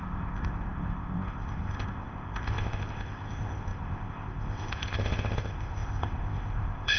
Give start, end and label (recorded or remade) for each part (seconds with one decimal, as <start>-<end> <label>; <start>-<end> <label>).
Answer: 0.0-7.0 remade